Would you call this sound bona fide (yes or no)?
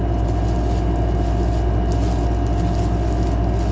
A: yes